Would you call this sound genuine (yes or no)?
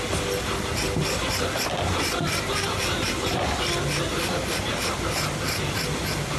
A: yes